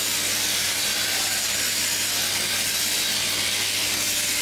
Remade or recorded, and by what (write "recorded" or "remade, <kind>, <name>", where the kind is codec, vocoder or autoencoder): recorded